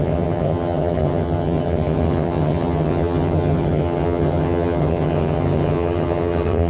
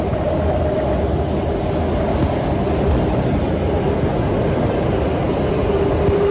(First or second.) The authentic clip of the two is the second